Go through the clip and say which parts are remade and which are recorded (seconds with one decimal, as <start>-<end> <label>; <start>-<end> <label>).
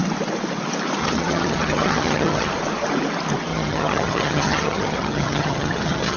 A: 0.0-1.0 recorded; 1.0-2.5 remade; 2.5-3.5 recorded; 3.5-6.2 remade